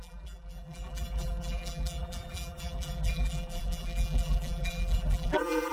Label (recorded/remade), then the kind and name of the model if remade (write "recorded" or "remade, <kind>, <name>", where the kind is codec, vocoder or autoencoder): remade, vocoder, BigVGAN v2